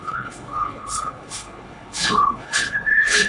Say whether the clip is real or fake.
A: fake